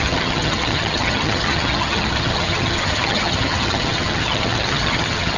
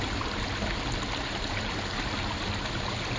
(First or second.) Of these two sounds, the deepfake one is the first